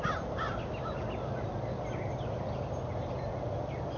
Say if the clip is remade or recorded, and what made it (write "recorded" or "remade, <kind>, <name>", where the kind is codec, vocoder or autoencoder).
recorded